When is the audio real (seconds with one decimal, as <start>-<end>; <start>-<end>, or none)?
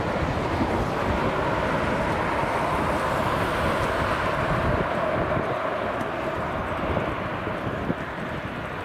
0.0-8.8